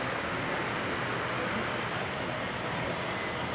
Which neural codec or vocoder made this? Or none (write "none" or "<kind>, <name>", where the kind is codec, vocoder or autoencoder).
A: none